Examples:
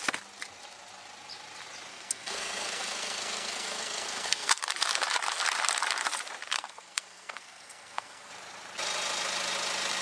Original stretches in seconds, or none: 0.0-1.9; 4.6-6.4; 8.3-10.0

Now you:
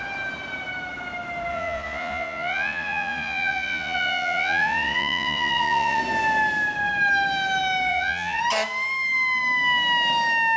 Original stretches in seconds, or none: 0.0-1.5; 6.0-7.9; 8.4-10.6

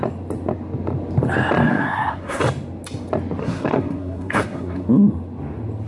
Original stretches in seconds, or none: 0.0-1.7; 2.4-3.4; 4.9-5.9

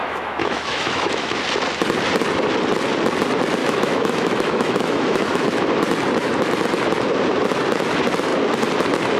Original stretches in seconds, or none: 1.4-3.6; 5.7-9.2

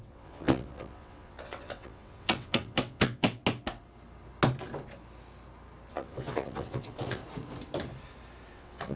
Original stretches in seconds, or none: 3.4-5.9; 7.2-8.5

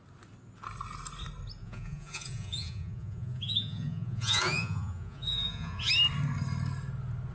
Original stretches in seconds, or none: 0.0-1.6; 5.9-7.3